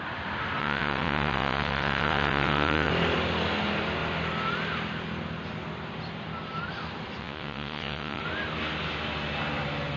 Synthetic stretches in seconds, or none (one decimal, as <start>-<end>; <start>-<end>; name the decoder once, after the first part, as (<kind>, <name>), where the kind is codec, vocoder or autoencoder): 0.6-2.9 (vocoder, WaveNeXt); 7.2-8.2